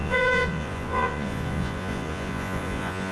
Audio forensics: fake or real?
fake